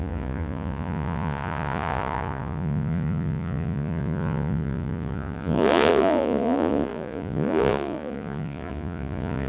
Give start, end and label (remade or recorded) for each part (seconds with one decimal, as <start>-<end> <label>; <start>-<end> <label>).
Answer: 0.0-9.5 remade